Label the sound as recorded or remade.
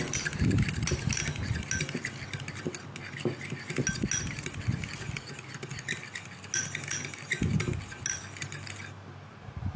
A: recorded